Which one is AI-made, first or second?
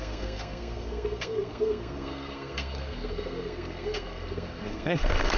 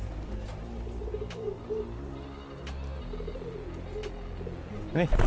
first